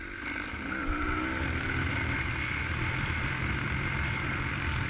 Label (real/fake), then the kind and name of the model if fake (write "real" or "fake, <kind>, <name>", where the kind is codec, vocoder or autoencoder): real